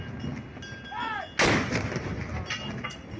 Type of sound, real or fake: real